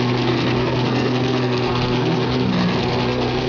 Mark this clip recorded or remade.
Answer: remade